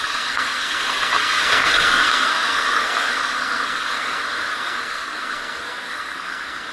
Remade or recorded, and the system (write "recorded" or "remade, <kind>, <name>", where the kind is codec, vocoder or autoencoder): remade, codec, SNAC